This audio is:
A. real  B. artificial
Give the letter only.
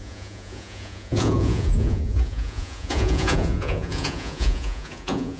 B